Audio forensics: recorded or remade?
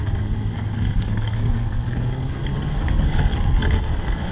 remade